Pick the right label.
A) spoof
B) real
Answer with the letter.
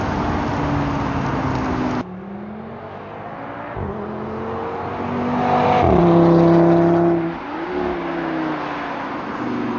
B